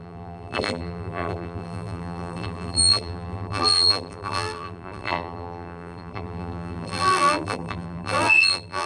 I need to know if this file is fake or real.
fake